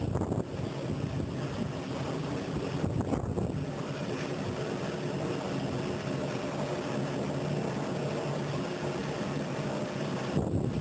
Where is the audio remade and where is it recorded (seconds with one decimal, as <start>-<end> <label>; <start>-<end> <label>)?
0.0-10.8 recorded